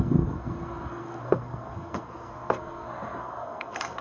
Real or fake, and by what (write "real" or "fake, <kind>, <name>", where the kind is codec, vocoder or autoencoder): fake, codec, SNAC